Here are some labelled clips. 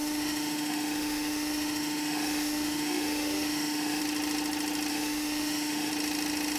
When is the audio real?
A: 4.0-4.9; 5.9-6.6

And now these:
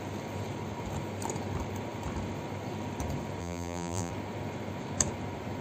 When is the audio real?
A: 0.0-3.4; 4.1-5.6

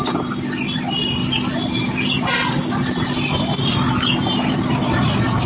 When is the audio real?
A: 0.0-5.5

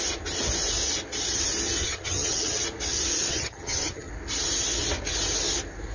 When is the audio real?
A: 0.0-1.8; 2.6-3.3; 4.1-5.9